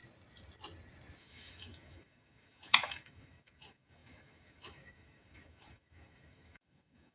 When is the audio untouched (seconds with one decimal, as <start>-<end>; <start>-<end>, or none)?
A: 0.0-1.2